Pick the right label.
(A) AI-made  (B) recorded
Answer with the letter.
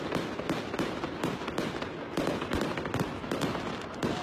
B